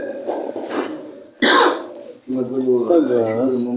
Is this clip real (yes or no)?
yes